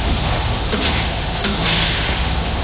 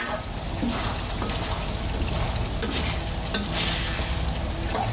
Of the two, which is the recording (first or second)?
second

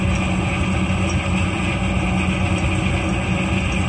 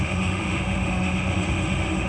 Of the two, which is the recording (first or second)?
first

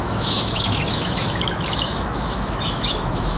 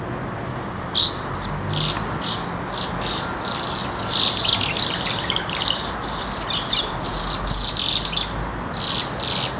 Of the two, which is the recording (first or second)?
second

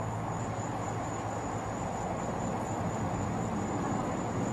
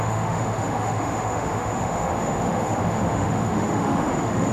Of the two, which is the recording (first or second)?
first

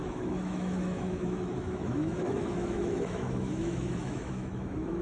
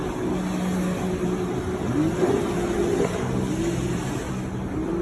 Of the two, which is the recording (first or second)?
second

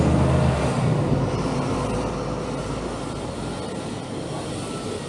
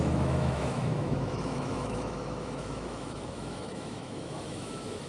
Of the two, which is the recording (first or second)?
first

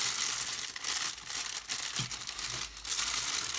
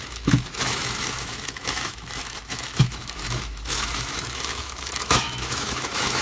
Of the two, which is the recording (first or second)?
first